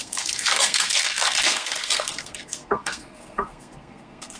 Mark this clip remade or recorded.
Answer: remade